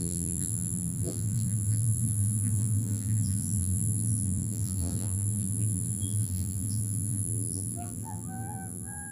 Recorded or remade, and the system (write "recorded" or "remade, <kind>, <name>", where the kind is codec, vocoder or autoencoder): remade, vocoder, BigVGAN v2